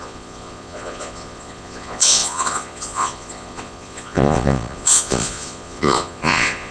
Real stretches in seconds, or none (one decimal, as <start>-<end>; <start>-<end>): none